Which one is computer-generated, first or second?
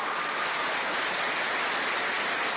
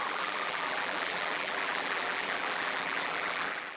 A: second